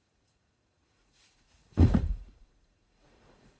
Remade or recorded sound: remade